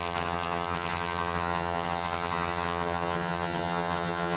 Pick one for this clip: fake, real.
fake